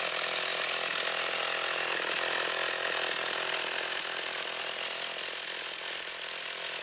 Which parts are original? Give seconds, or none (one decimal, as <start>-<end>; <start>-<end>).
0.0-6.8